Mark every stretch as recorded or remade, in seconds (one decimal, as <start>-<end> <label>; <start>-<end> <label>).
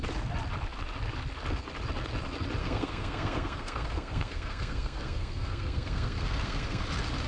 0.0-2.6 recorded; 2.6-6.8 remade; 6.8-7.3 recorded